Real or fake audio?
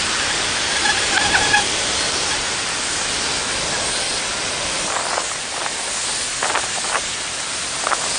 real